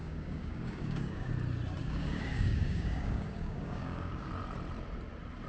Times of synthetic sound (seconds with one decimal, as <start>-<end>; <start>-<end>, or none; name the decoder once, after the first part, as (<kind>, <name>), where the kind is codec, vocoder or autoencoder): 0.0-1.3 (codec, DAC); 1.8-4.3